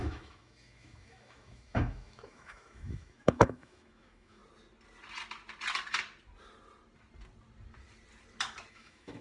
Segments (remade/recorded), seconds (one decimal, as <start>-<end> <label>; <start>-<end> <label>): 0.0-4.4 remade; 4.4-8.7 recorded; 8.7-9.2 remade